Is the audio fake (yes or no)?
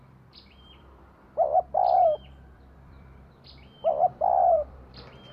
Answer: yes